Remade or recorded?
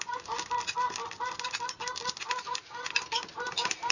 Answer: recorded